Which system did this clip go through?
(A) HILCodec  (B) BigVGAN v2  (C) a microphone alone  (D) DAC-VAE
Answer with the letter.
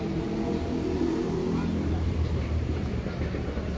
B